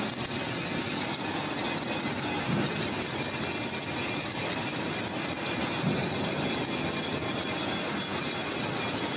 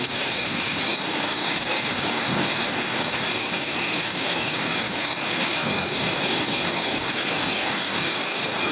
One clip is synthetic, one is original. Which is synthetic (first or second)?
second